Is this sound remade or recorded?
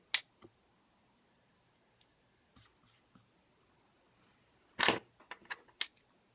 recorded